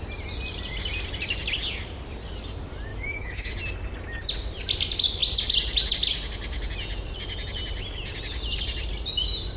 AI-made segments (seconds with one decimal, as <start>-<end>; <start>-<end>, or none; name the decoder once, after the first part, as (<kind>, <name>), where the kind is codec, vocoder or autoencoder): 2.9-3.5 (autoencoder, DAC-VAE)